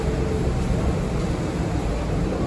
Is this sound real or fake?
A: real